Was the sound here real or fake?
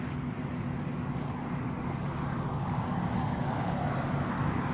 fake